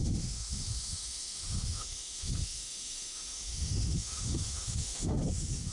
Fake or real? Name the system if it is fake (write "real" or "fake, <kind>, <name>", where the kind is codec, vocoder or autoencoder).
fake, autoencoder, DAC-VAE